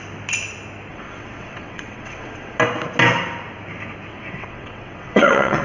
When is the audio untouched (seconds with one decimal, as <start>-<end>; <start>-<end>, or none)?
0.0-0.9; 2.6-4.1